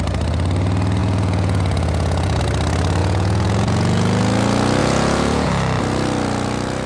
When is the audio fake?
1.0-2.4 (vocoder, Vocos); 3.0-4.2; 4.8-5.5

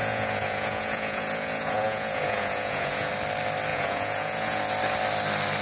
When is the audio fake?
0.0-3.1 (vocoder, Vocos); 3.7-4.6

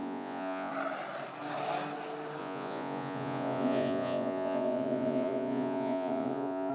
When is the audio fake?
0.0-0.7 (vocoder, Vocos); 2.4-6.7